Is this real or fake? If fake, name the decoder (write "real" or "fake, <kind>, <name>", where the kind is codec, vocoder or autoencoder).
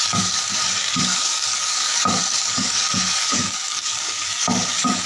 fake, codec, DAC